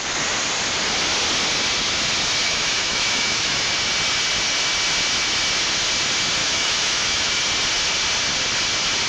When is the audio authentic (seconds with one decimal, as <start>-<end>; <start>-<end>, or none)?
0.0-2.4; 3.7-6.4; 7.4-9.1